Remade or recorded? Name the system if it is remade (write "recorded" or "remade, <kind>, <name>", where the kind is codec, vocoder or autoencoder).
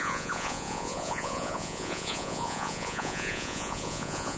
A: remade, vocoder, Vocos